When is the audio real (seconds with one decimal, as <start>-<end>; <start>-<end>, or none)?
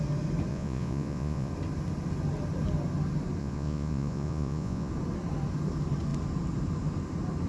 0.0-0.5; 1.5-3.4; 4.9-7.5